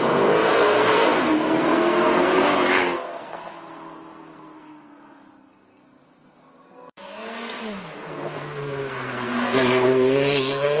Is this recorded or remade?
remade